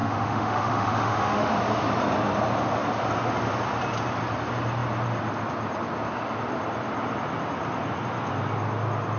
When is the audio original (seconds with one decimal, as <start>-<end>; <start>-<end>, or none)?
1.6-9.2